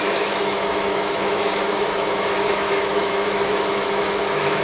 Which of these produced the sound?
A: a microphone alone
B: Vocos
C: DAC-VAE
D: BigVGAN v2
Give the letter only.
C